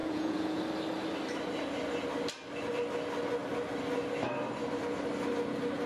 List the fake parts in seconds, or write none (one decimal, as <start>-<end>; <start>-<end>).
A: 0.0-0.6